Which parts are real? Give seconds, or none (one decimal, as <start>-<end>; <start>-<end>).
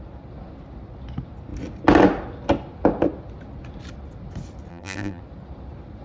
0.0-4.7; 5.2-6.0